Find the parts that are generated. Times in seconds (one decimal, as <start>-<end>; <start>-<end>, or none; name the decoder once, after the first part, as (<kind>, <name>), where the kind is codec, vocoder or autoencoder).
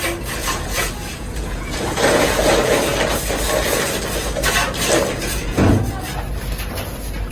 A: 0.4-2.4 (vocoder, Vocos); 5.1-5.8